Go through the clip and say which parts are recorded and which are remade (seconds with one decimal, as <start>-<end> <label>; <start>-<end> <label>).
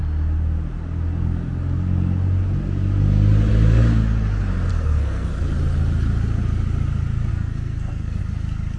0.0-4.7 recorded; 4.7-5.3 remade; 5.3-7.3 recorded; 7.3-8.2 remade; 8.2-8.8 recorded